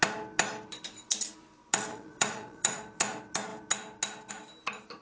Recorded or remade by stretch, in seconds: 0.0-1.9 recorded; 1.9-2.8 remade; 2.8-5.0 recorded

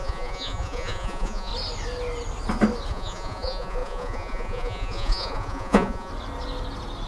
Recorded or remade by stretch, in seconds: 0.0-1.5 remade; 1.5-2.9 recorded; 2.9-6.1 remade; 6.1-7.1 recorded

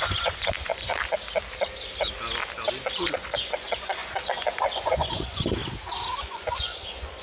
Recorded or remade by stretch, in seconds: 0.0-0.9 remade; 0.9-2.8 recorded; 2.8-5.6 remade; 5.6-6.2 recorded; 6.2-7.2 remade

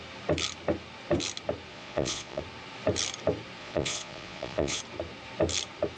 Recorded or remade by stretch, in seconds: 0.0-1.7 recorded; 1.7-2.4 remade; 2.4-3.6 recorded; 3.6-4.8 remade; 4.8-6.0 recorded

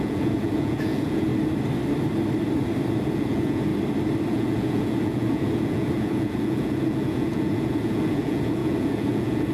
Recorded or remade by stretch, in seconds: 0.0-1.3 remade; 1.3-3.0 recorded; 3.0-3.7 remade; 3.7-4.3 recorded; 4.3-9.5 remade

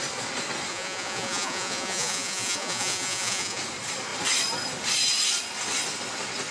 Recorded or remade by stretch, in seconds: 0.0-0.7 recorded; 0.7-3.6 remade; 3.6-6.5 recorded

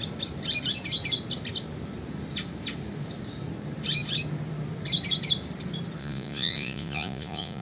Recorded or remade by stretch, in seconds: 0.0-6.0 recorded; 6.0-7.6 remade